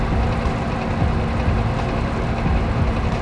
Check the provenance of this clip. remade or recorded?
recorded